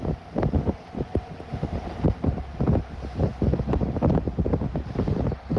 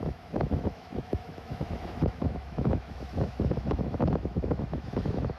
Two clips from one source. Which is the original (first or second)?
first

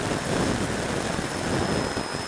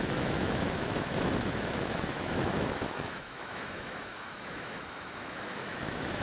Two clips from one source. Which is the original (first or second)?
first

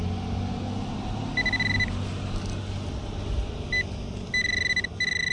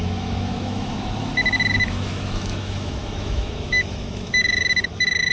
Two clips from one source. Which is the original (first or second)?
first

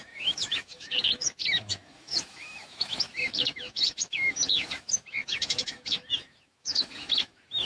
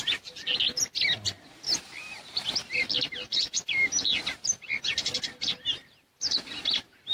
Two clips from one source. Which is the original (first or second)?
second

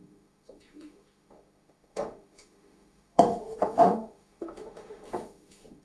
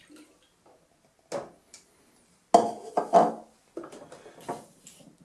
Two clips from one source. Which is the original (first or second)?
second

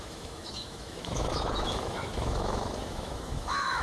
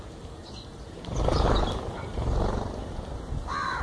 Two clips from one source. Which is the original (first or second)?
second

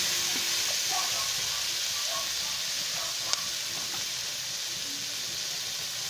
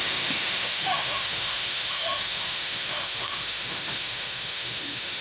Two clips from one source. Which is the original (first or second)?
first